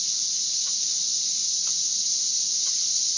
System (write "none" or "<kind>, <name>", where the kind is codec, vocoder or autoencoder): none